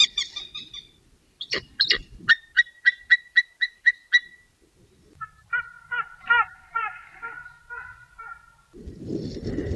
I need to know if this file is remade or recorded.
recorded